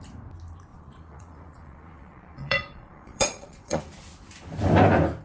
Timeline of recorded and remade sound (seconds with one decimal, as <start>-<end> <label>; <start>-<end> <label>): 0.0-0.7 recorded; 0.7-3.8 remade; 3.8-5.2 recorded